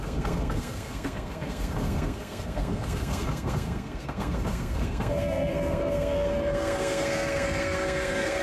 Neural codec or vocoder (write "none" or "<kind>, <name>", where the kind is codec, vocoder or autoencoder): codec, SNAC